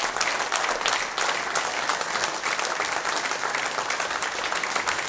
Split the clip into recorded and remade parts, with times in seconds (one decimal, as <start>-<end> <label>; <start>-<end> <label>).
0.0-5.1 recorded